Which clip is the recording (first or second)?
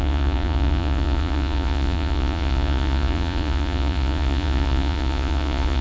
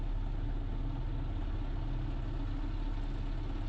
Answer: second